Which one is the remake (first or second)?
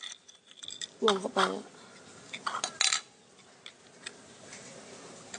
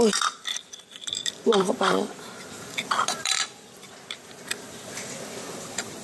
second